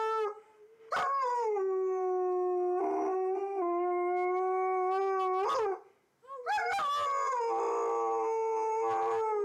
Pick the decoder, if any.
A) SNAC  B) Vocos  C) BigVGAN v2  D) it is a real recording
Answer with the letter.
D